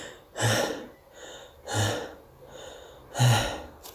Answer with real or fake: real